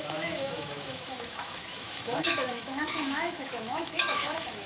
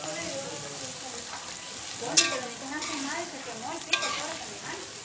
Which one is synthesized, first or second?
first